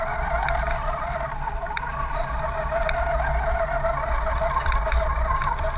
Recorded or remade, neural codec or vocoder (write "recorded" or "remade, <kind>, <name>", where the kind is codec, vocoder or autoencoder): recorded